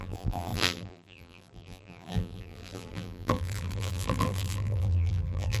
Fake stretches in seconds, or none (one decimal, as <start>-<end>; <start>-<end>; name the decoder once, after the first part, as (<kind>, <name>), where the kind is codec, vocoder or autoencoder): 0.0-5.6 (vocoder, BigVGAN v2)